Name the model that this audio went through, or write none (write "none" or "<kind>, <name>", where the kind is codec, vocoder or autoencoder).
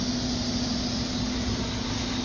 none